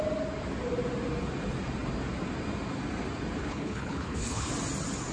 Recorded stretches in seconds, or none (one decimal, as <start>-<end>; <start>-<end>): 0.0-3.4; 4.5-5.1